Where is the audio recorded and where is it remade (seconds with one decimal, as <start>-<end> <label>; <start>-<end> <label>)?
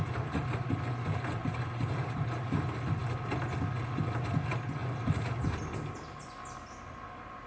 0.0-1.4 recorded; 1.4-2.3 remade; 2.3-4.8 recorded; 4.8-5.5 remade; 5.5-7.5 recorded